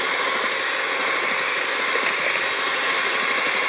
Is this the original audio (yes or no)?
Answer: yes